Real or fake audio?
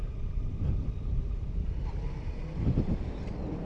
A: fake